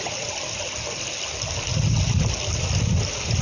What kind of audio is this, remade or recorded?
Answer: recorded